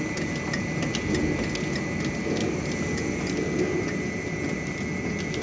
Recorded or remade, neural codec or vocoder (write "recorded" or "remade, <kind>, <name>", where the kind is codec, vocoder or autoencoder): recorded